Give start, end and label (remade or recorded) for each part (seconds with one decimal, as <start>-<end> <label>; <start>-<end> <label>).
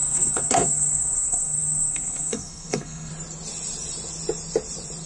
0.0-3.1 remade; 3.1-5.1 recorded